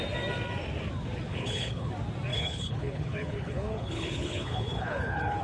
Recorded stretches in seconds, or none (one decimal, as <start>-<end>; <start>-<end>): 0.0-1.3; 1.9-2.3